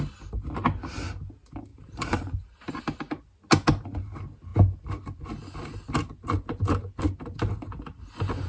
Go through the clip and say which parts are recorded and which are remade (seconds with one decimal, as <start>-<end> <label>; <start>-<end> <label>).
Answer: 0.0-1.7 recorded; 1.7-2.7 remade; 2.7-8.5 recorded